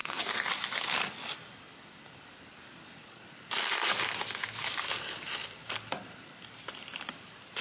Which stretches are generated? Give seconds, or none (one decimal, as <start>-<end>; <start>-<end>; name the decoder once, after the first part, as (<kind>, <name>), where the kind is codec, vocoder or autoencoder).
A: 0.0-0.5 (codec, SNAC)